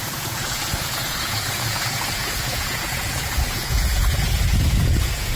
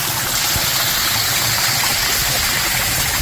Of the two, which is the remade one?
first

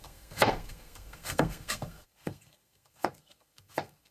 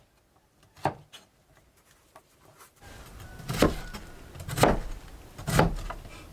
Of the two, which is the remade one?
first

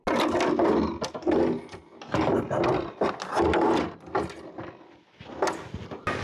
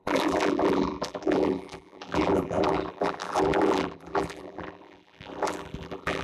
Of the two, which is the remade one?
second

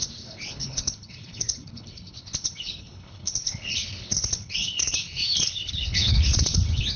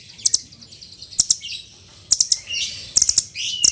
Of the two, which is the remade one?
first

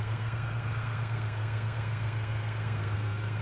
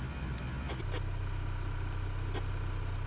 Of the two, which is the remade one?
first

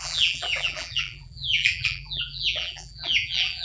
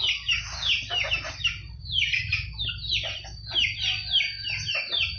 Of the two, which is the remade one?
first